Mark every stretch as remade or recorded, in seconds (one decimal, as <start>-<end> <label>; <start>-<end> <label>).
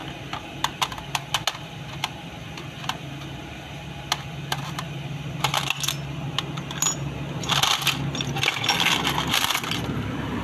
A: 0.0-10.4 recorded